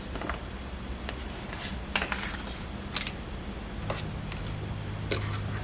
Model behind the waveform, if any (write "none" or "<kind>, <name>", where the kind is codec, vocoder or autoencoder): none